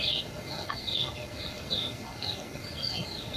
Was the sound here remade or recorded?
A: remade